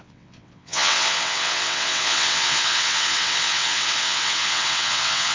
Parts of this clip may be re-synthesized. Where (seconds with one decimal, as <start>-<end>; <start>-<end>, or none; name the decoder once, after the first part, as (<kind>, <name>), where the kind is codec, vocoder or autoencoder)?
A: 0.0-5.3 (vocoder, WaveNeXt)